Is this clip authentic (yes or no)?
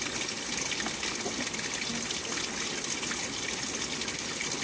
yes